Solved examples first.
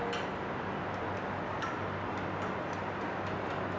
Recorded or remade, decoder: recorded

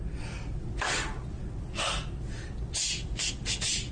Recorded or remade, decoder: recorded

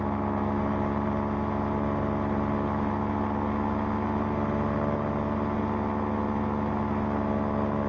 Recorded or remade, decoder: recorded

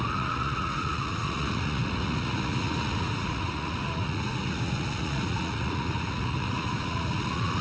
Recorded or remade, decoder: remade, vocoder, Vocos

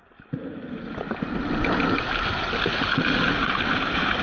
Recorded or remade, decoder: recorded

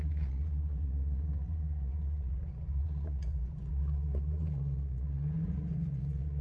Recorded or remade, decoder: remade, vocoder, Vocos